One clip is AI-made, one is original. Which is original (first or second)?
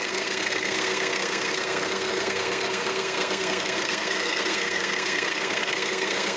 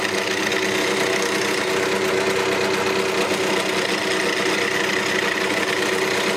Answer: second